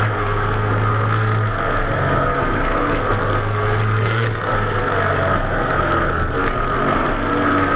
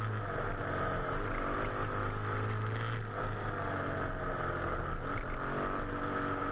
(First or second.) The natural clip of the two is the second